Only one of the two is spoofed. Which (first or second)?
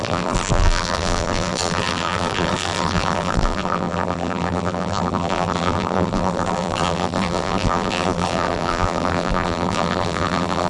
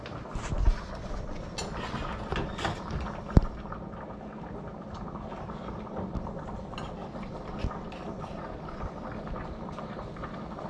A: first